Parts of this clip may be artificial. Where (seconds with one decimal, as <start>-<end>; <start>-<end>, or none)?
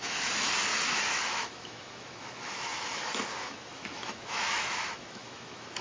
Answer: 0.0-5.8